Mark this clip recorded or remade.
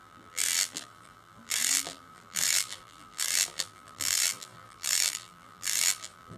remade